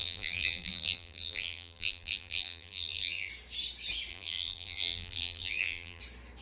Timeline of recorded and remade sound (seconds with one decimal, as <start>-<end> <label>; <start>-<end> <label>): 0.0-3.3 remade; 3.3-4.1 recorded; 4.1-6.0 remade; 6.0-6.4 recorded